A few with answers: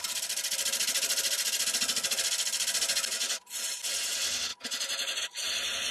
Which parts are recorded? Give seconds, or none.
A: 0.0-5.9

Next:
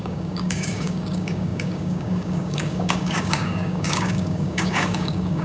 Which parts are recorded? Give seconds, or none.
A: none

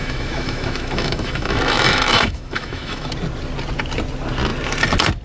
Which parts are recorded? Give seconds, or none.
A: 3.1-5.2